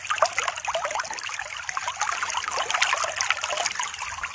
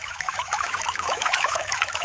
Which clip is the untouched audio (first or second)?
first